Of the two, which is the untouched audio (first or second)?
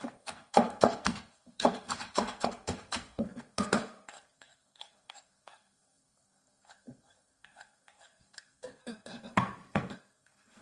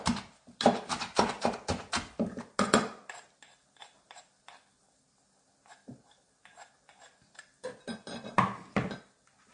second